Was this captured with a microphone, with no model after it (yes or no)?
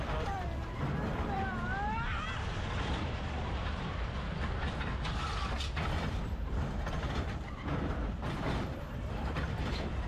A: no